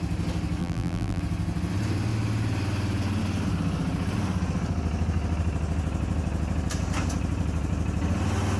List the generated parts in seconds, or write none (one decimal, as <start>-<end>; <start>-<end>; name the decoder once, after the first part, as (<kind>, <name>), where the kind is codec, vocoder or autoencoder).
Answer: 0.6-1.2 (vocoder, BigVGAN v2)